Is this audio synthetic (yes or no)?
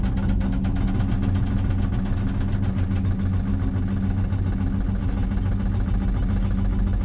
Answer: no